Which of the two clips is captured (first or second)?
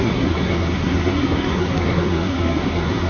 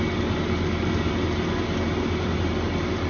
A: second